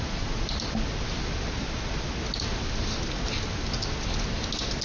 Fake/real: real